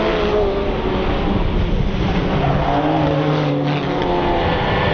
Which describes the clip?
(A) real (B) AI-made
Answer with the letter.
A